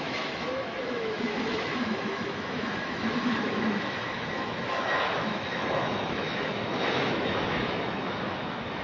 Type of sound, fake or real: fake